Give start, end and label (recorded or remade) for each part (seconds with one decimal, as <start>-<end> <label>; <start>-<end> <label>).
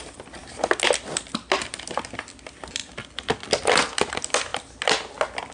0.0-5.5 recorded